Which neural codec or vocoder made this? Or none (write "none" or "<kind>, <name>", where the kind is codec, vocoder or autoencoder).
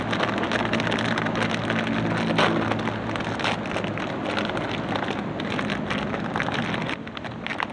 none